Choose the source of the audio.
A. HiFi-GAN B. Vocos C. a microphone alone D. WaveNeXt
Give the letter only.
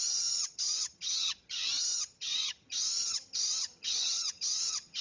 A